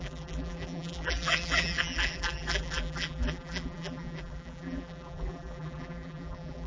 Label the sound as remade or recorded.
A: remade